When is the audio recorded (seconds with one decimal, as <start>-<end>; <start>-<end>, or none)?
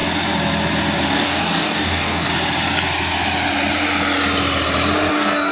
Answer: 0.0-1.1; 2.3-5.1